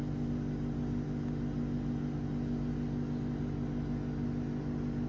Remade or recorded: recorded